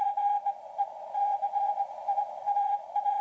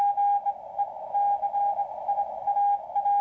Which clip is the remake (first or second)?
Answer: first